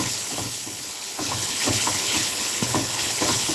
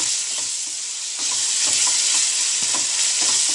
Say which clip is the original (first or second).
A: second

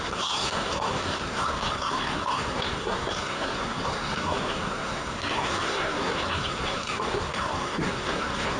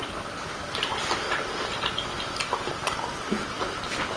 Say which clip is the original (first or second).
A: second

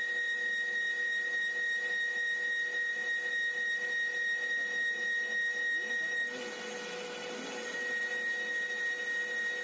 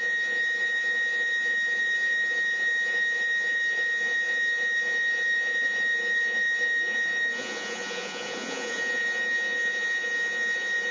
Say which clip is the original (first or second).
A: first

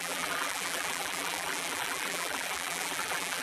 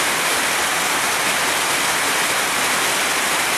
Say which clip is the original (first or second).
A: second